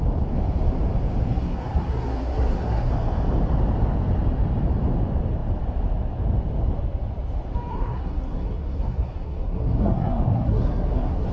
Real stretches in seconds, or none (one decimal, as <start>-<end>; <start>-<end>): 0.0-1.3; 2.9-7.7